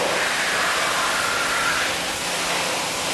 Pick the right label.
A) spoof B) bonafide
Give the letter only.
B